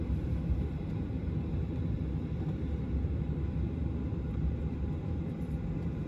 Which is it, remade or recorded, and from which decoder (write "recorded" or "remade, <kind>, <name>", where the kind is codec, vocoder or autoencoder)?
remade, vocoder, BigVGAN v2